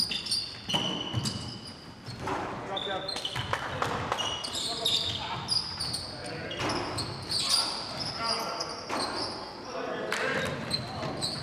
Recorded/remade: recorded